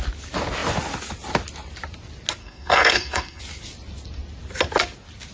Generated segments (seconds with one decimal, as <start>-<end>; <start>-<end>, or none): 2.4-3.4